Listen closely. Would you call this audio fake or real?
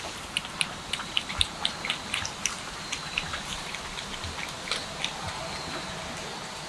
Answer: fake